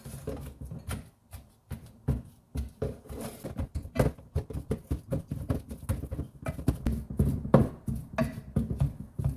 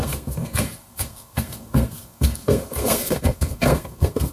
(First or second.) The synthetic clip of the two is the second